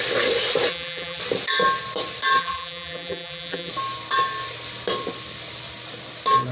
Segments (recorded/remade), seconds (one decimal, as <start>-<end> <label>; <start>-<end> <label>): 0.0-0.7 recorded; 0.7-1.2 remade; 1.2-2.4 recorded; 2.4-3.7 remade; 3.7-6.5 recorded